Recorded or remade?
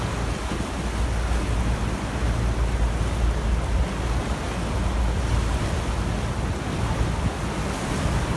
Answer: recorded